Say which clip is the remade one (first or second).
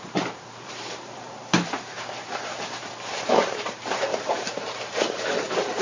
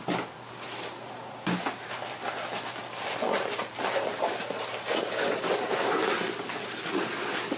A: first